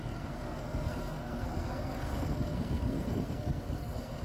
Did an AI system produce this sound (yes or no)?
yes